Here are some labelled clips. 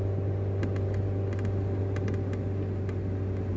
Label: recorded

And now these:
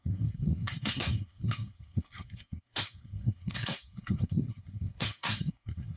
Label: remade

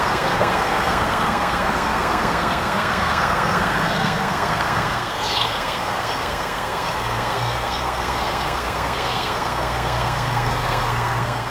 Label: remade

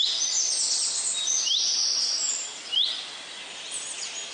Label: recorded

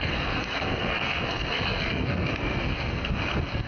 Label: remade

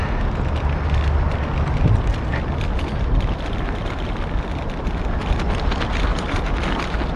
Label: recorded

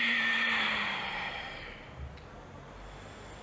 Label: recorded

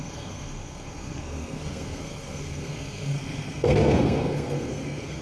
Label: remade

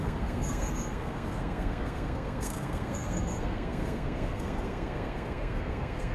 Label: remade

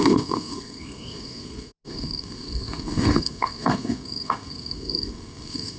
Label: remade